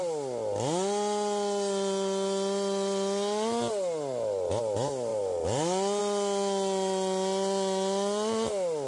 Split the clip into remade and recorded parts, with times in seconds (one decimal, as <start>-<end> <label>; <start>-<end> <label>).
0.0-8.9 recorded